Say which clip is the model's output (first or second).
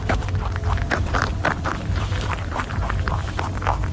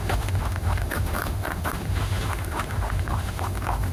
second